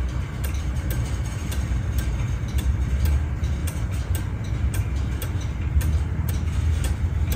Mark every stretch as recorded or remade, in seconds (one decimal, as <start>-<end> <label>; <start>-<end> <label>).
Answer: 0.0-1.4 recorded; 1.4-3.2 remade; 3.2-3.6 recorded; 3.6-6.3 remade; 6.3-7.4 recorded